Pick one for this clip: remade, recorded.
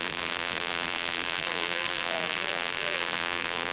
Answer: remade